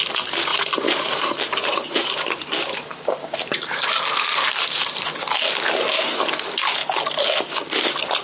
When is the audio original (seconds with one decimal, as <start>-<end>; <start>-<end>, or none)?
0.0-0.5; 5.0-8.2